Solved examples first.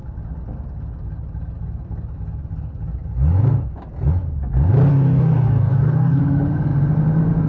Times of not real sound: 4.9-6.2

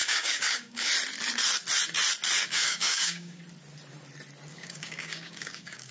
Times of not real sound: 0.0-0.9; 2.4-3.4; 4.5-5.9

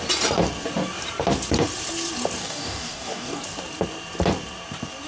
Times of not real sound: 2.4-3.4